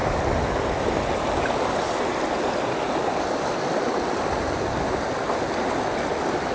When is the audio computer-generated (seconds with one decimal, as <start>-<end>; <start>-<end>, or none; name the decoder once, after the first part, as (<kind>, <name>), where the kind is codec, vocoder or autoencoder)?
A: none